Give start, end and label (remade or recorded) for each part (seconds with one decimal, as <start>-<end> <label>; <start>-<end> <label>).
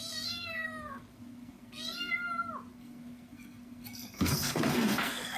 0.0-2.1 remade; 2.1-2.7 recorded; 2.7-5.4 remade